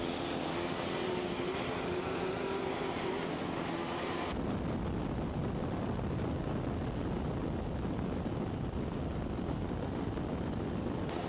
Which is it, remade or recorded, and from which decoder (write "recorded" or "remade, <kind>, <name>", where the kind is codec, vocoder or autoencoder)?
recorded